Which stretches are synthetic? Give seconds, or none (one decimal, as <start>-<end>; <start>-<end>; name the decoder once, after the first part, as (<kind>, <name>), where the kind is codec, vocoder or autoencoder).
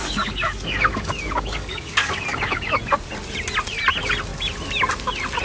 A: 0.0-2.8 (codec, DAC)